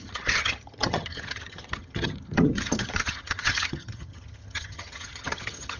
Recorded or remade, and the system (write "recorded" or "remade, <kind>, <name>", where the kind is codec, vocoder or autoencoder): remade, vocoder, HiFi-GAN